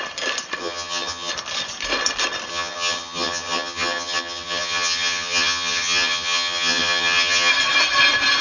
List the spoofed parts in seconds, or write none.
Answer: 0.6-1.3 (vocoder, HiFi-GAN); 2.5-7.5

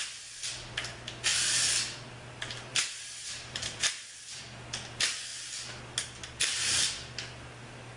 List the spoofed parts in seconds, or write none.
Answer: 2.7-4.4 (vocoder, BigVGAN v2)